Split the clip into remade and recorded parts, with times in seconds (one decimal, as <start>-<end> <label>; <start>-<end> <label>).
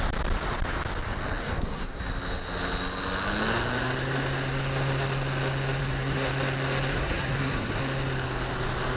0.0-1.4 recorded; 1.4-2.0 remade; 2.0-5.8 recorded; 5.8-6.3 remade; 6.3-6.9 recorded; 6.9-7.8 remade; 7.8-9.0 recorded